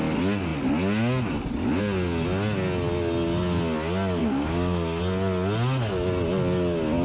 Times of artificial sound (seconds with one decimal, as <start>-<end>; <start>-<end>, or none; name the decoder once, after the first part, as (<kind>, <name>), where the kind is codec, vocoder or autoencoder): 4.2-5.0 (codec, DAC)

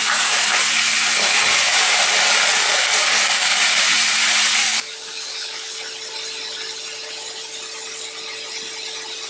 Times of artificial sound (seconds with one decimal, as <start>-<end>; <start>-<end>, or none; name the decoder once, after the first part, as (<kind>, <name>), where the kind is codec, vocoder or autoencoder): 0.0-0.5 (codec, DAC); 2.5-3.6; 4.6-5.8

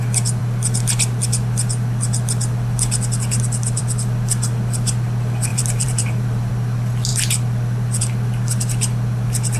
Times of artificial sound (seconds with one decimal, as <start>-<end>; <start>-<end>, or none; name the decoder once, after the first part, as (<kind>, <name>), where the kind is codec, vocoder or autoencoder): 5.5-6.5 (vocoder, BigVGAN v2)

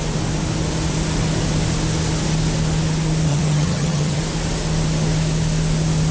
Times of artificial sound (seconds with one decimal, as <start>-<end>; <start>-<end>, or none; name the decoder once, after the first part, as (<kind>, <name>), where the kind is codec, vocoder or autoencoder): 3.3-4.2 (vocoder, HiFi-GAN)

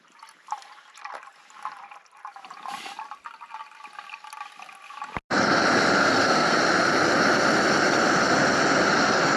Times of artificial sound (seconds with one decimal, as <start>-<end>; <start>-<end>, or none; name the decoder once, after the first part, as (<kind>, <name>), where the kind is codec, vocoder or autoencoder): 6.0-6.6 (codec, SNAC)